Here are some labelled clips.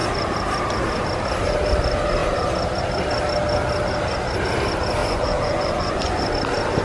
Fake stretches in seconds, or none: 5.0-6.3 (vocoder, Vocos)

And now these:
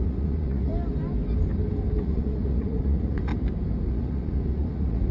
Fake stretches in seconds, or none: 0.0-0.7 (vocoder, Vocos); 2.0-3.3; 3.9-5.1